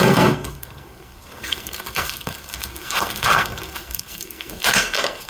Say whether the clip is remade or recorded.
remade